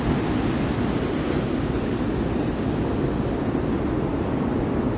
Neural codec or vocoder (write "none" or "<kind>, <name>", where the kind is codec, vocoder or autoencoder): none